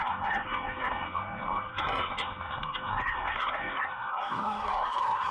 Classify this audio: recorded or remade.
remade